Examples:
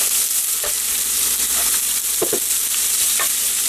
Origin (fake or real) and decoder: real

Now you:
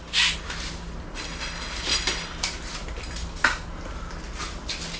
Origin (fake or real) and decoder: real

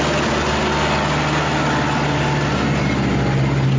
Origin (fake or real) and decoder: real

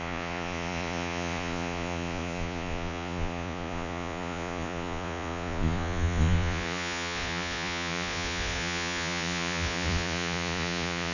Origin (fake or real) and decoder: fake, vocoder, Vocos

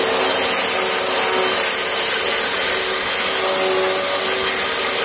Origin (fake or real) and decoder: real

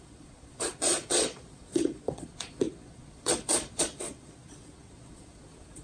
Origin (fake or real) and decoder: fake, vocoder, Vocos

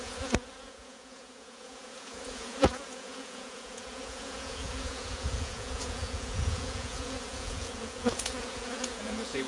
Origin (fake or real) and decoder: fake, vocoder, Vocos